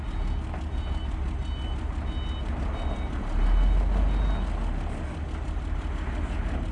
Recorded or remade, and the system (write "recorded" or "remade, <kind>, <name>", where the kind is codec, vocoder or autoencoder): recorded